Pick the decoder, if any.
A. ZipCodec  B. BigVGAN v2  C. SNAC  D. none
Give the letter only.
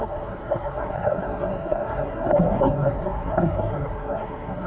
C